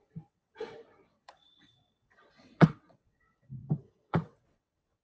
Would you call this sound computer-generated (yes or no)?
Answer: yes